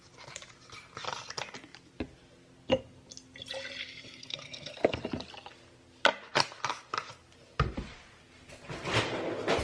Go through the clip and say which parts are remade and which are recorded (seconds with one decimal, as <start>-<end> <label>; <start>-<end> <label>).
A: 0.0-3.8 recorded; 3.8-5.0 remade; 5.0-9.6 recorded